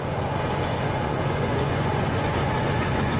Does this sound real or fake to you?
fake